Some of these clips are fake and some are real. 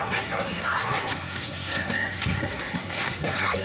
fake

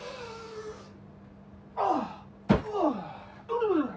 real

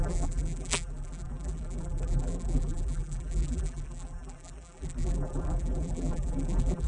fake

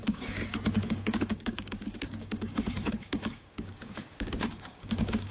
fake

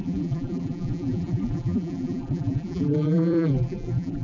fake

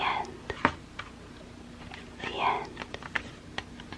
real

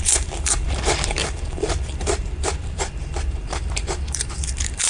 fake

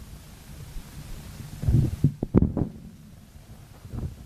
real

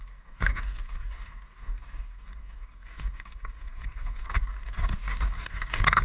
fake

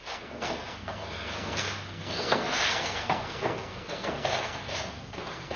fake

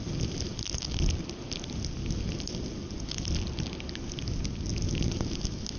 real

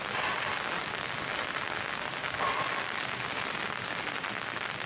real